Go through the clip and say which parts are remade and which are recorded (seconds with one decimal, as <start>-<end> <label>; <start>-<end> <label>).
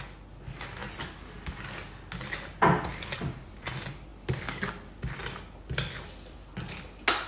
0.0-7.3 recorded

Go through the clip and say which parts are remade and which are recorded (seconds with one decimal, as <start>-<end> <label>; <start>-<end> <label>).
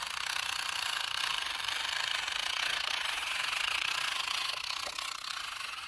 0.0-2.4 recorded; 2.4-5.9 remade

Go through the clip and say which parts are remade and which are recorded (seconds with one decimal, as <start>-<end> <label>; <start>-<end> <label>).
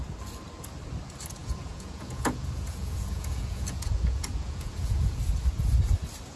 0.0-1.4 recorded; 1.4-5.2 remade; 5.2-6.4 recorded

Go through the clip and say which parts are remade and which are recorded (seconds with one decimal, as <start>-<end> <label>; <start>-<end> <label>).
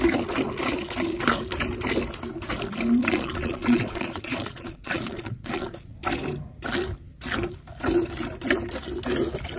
0.0-3.0 recorded; 3.0-6.0 remade; 6.0-9.6 recorded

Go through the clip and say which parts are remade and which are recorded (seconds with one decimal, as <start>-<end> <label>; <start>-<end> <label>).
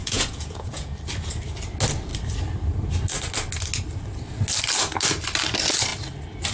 0.0-0.9 remade; 0.9-6.5 recorded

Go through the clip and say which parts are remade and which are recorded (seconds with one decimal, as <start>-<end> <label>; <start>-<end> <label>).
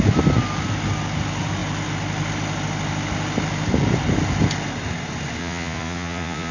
0.0-5.4 recorded; 5.4-6.5 remade